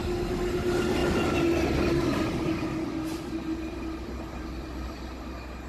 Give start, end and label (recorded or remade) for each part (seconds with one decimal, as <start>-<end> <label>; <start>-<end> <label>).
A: 0.0-5.7 recorded